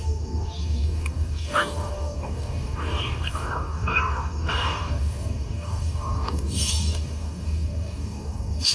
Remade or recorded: remade